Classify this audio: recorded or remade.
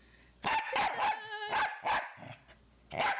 recorded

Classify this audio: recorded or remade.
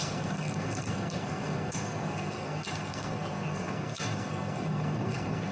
remade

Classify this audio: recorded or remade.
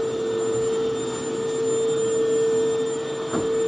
recorded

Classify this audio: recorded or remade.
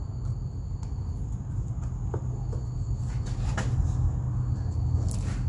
recorded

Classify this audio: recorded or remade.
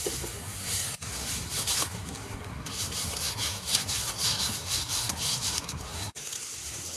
remade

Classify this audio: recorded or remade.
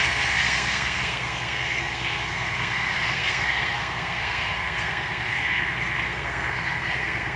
remade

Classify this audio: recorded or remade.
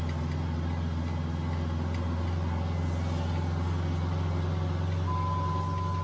recorded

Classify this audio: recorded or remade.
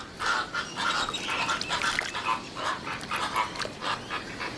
recorded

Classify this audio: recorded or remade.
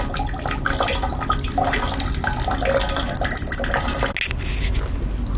recorded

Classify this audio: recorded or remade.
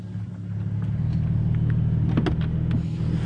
recorded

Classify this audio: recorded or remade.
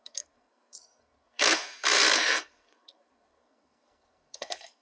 remade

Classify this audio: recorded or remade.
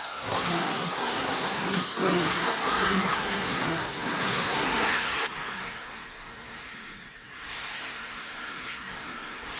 remade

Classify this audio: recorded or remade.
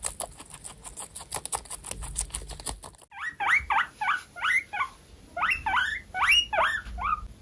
recorded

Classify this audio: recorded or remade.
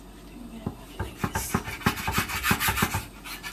recorded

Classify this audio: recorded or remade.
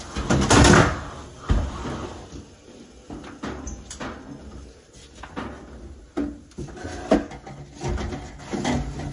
recorded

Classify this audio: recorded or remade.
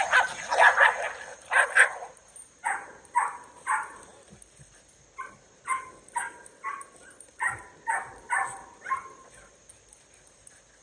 recorded